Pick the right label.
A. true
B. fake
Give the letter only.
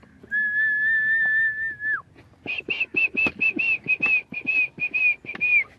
A